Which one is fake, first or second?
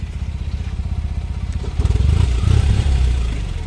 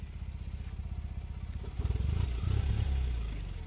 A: first